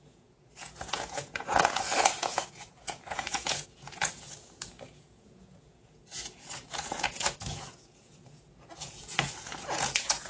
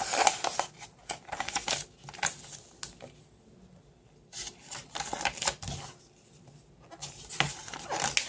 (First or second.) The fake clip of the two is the first